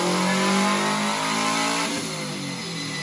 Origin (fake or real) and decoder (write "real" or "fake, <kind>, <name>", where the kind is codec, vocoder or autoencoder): real